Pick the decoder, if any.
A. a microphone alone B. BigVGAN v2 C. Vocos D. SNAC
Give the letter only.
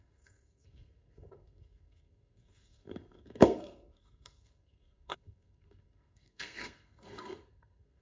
D